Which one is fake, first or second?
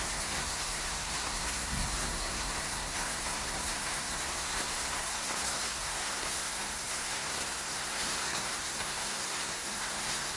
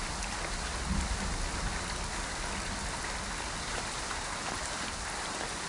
first